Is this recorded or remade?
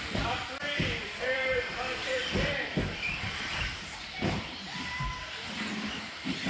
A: remade